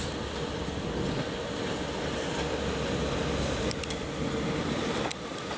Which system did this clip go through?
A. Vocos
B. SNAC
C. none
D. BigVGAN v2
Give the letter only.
C